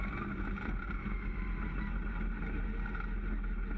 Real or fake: real